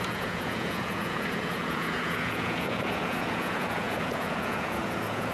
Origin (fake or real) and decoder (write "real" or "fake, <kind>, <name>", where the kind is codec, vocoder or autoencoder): fake, vocoder, Vocos